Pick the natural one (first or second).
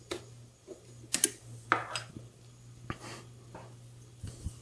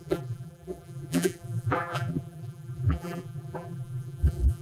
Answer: first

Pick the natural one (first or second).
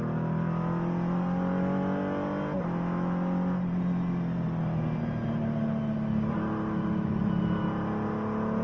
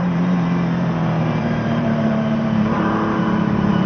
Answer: first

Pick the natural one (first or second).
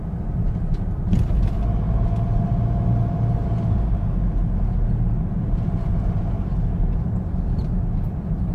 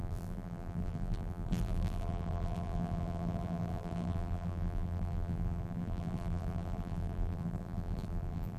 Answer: first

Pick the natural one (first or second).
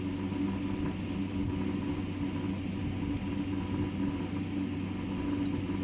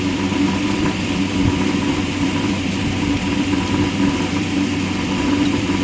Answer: first